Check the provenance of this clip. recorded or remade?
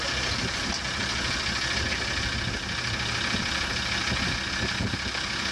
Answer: recorded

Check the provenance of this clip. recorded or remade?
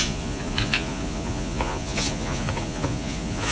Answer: remade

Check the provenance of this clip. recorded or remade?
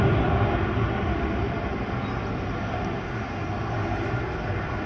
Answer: recorded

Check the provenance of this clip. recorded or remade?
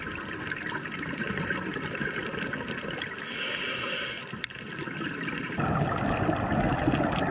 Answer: recorded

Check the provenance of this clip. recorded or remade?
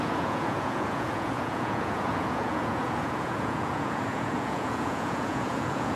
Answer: remade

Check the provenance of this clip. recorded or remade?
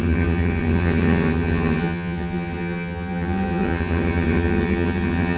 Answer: remade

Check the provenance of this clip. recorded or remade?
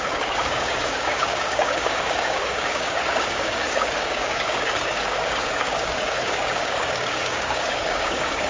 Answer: remade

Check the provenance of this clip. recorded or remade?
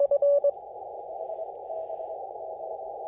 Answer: recorded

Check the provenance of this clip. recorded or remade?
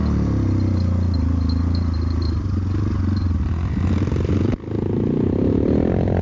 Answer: recorded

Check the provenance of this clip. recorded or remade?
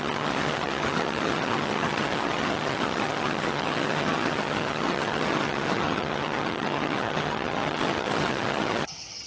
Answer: remade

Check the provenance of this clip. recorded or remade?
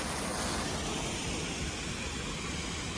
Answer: recorded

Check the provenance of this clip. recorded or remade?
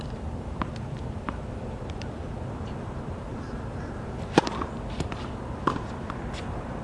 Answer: remade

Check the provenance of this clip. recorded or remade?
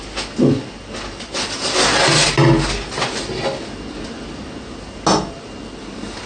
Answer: recorded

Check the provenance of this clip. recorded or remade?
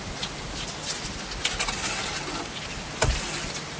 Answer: recorded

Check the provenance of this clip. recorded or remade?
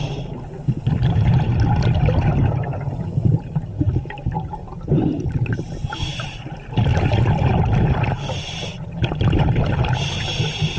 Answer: recorded